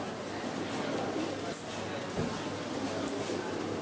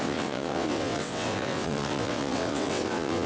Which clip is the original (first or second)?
first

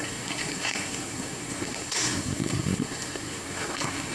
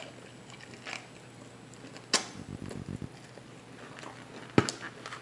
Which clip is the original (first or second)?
second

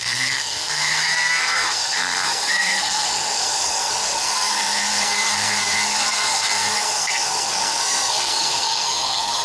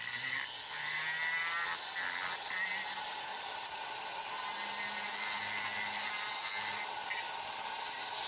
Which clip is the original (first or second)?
second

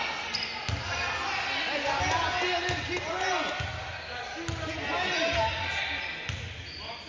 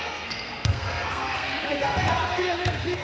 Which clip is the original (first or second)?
first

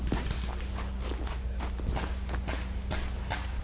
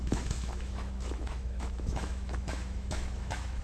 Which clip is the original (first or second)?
first